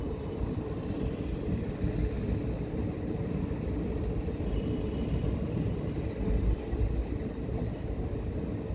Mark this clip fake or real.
real